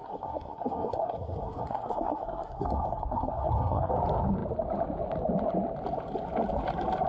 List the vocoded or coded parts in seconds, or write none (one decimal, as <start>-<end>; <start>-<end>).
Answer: 0.0-3.9